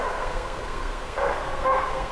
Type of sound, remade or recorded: remade